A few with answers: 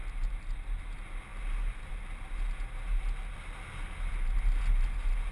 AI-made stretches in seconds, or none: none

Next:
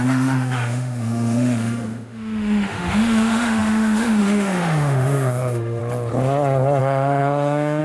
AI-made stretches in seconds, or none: 0.0-5.8 (autoencoder, DAC-VAE); 6.8-7.8

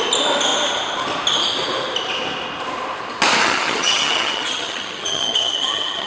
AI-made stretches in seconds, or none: 3.4-6.1 (vocoder, HiFi-GAN)

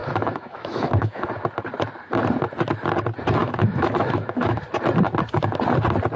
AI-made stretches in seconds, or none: 0.0-1.3 (autoencoder, DAC-VAE); 3.4-4.6

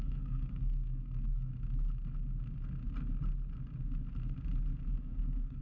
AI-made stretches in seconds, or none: 0.0-1.5 (codec, SNAC); 4.9-5.6

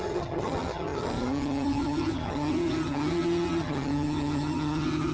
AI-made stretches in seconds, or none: 0.0-5.1 (vocoder, HiFi-GAN)

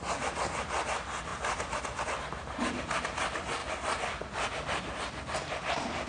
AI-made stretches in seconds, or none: none

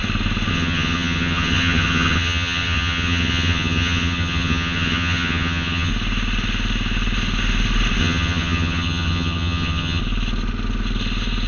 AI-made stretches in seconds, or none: 0.5-5.9 (vocoder, HiFi-GAN); 8.0-10.0